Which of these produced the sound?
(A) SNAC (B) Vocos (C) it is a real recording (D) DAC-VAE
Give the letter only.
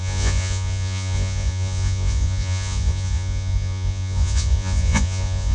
B